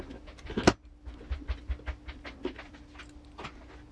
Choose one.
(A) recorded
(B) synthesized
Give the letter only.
A